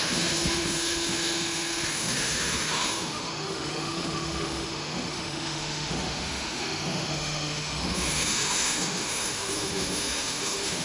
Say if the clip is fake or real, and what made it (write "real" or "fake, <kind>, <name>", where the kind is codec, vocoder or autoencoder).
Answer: fake, autoencoder, DAC-VAE